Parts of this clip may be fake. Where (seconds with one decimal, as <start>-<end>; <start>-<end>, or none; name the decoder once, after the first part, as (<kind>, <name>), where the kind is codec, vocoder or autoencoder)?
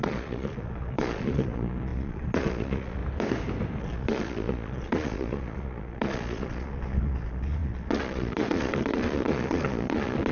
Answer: 0.0-3.0 (vocoder, Vocos); 3.8-10.3